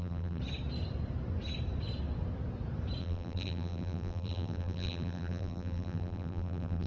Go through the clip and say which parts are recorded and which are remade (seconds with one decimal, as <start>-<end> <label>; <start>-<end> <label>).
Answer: 0.0-0.4 remade; 0.4-3.0 recorded; 3.0-6.9 remade